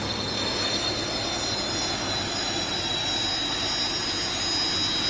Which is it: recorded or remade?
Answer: recorded